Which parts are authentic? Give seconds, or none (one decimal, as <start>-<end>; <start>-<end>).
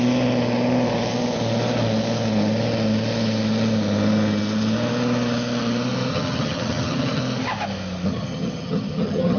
0.0-6.1; 7.2-8.1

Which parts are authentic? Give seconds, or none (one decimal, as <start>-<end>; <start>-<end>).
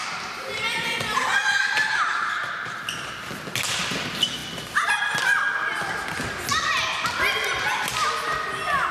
0.0-8.9